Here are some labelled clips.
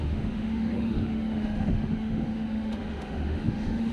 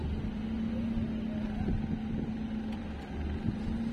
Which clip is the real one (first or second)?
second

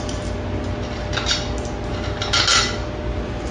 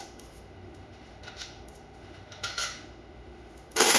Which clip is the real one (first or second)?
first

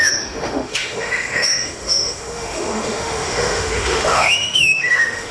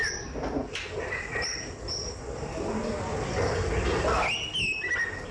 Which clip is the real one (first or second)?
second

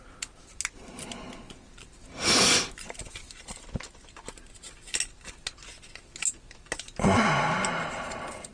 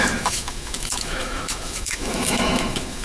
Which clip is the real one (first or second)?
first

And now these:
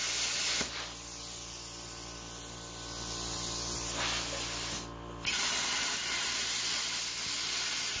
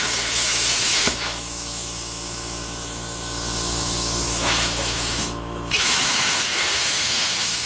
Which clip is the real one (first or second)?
first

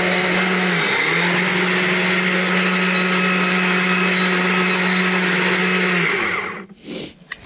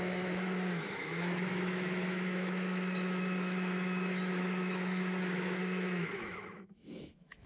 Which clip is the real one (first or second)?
first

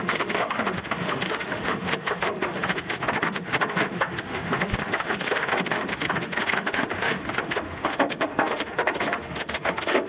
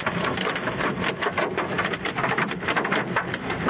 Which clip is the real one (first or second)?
second